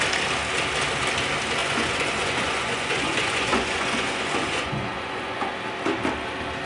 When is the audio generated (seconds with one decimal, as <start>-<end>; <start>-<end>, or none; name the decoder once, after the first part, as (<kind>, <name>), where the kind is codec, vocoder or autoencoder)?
1.6-5.5 (vocoder, Vocos)